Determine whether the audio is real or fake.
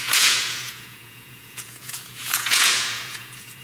fake